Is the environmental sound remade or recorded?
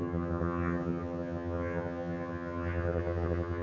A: remade